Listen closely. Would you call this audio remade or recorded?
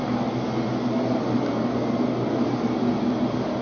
recorded